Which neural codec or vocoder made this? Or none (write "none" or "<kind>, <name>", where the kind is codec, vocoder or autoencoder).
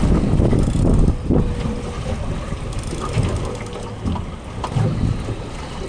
none